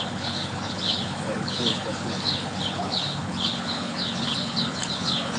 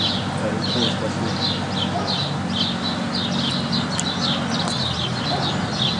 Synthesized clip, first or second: first